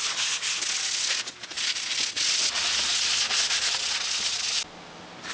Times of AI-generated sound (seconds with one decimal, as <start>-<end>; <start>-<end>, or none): none